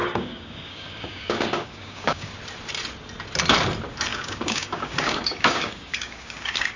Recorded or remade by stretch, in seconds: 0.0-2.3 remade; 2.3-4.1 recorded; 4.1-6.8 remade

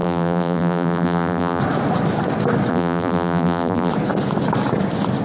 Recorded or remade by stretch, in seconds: 0.0-1.6 remade; 1.6-2.7 recorded; 2.7-3.9 remade; 3.9-5.2 recorded

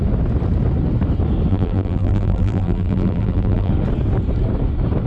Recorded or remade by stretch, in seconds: 0.0-1.5 recorded; 1.5-3.7 remade; 3.7-5.1 recorded

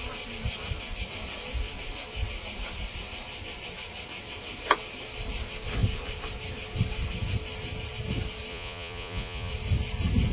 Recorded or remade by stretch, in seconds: 0.0-8.5 recorded; 8.5-9.5 remade; 9.5-10.3 recorded

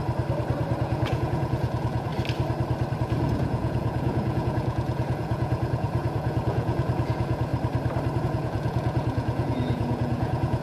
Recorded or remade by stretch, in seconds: 0.0-0.8 recorded; 0.8-2.1 remade; 2.1-3.0 recorded; 3.0-7.5 remade; 7.5-8.2 recorded; 8.2-10.6 remade